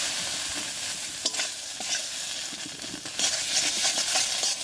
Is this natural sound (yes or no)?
yes